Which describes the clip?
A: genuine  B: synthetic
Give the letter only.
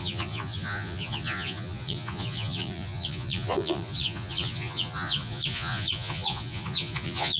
B